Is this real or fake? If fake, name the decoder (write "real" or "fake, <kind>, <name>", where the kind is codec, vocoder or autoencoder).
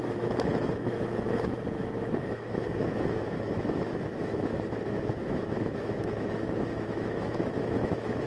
fake, autoencoder, DAC-VAE